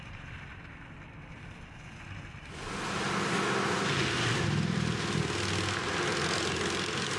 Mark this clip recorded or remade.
recorded